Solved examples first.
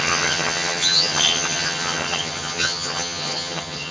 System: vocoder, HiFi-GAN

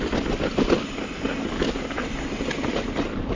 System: none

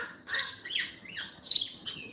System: vocoder, HiFi-GAN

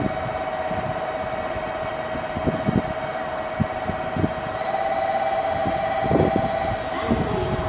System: none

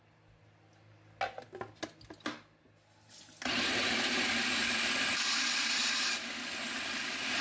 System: none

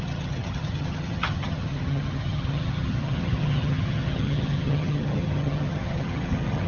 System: vocoder, HiFi-GAN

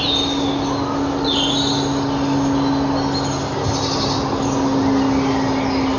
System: none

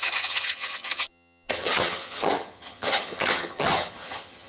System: vocoder, HiFi-GAN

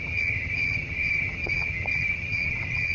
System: vocoder, HiFi-GAN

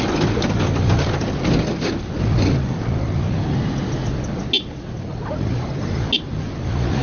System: none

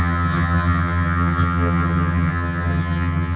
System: vocoder, HiFi-GAN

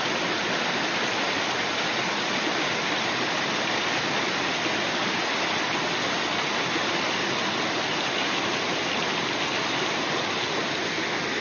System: none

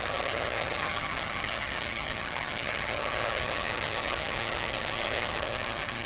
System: vocoder, HiFi-GAN